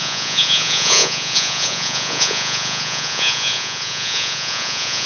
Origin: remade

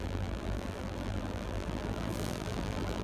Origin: remade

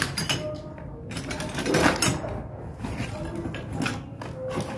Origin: recorded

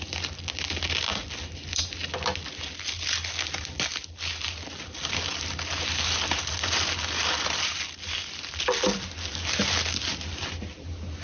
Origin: recorded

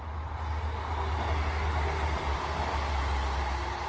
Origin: recorded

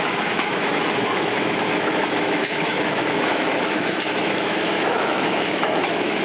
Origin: remade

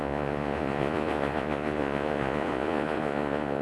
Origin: remade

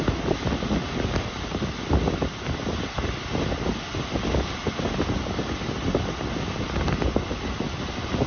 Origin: recorded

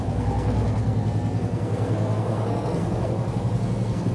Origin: remade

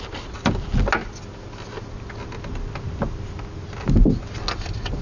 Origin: recorded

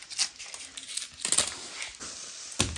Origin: recorded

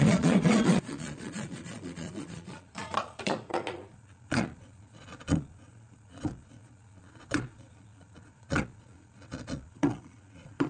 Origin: remade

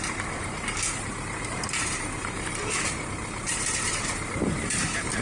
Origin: remade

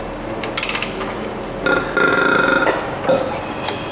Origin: recorded